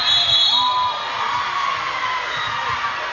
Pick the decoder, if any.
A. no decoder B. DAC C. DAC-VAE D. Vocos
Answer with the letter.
A